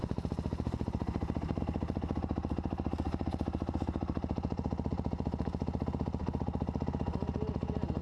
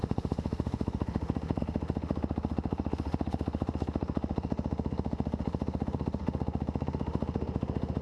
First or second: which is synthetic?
second